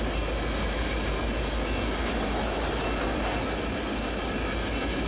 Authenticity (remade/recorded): recorded